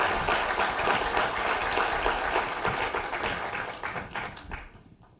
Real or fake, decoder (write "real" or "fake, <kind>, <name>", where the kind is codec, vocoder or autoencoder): real